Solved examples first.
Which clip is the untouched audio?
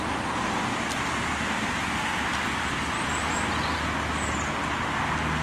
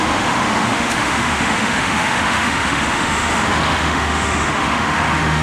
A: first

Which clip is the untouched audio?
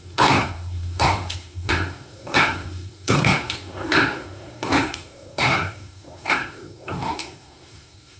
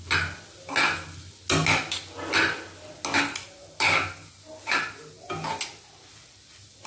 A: second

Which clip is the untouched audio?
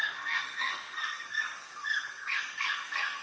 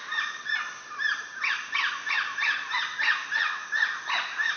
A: second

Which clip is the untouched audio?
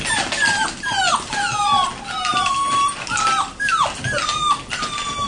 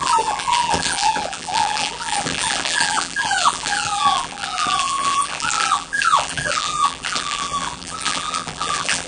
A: first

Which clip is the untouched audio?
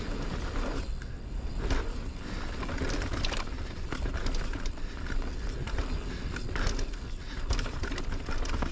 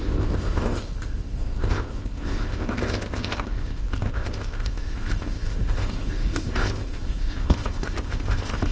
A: first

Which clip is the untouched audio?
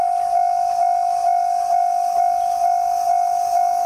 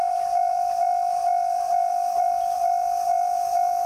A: first